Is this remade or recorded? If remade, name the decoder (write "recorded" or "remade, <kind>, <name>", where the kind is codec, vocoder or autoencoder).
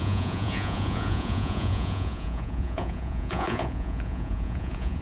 remade, vocoder, Vocos